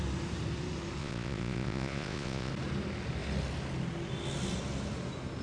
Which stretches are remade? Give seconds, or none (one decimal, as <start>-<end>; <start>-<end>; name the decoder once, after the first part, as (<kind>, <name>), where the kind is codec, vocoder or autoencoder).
1.0-2.5 (vocoder, Vocos)